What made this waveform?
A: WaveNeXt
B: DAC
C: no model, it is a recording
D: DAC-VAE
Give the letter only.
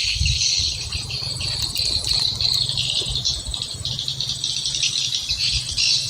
C